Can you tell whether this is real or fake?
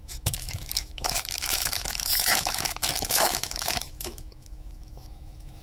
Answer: fake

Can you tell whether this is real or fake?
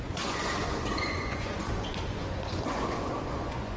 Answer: fake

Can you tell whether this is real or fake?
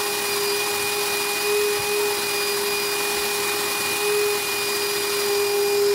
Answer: real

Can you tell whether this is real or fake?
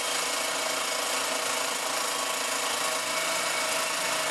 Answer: real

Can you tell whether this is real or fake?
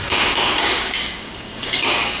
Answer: fake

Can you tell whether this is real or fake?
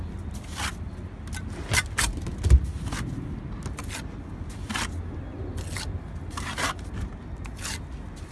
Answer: real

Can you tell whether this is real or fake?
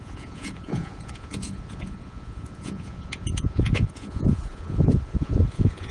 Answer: fake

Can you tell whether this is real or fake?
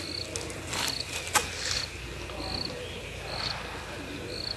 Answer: real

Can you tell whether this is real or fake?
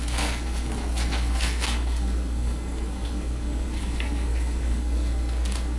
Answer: fake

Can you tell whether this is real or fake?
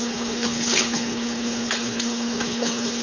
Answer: fake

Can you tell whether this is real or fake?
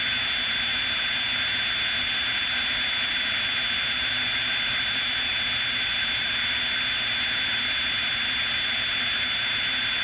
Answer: real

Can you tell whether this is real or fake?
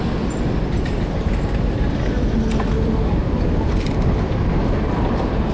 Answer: real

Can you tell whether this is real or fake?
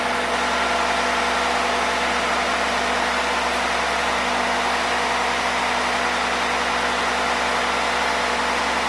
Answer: real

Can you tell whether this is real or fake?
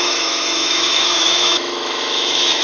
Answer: fake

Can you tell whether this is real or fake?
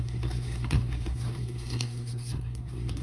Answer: fake